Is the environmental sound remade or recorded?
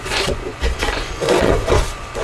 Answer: remade